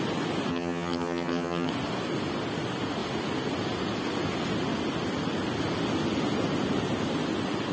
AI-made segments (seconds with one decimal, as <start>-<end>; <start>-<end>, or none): 0.5-1.7